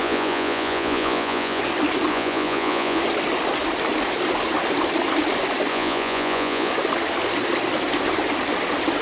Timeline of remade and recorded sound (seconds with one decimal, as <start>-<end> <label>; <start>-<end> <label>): 0.0-1.6 remade; 1.6-2.1 recorded; 2.1-3.0 remade; 3.0-5.7 recorded; 5.7-6.7 remade; 6.7-9.0 recorded